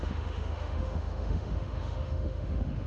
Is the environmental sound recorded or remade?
remade